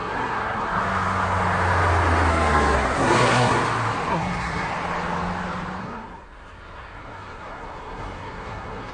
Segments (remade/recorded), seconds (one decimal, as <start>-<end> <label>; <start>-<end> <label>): 0.0-0.8 remade; 0.8-2.3 recorded; 2.3-3.6 remade; 3.6-4.1 recorded; 4.1-4.7 remade; 4.7-5.8 recorded; 5.8-8.9 remade